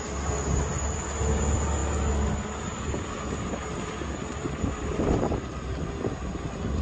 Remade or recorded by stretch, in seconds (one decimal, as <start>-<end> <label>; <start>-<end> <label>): 0.0-6.8 recorded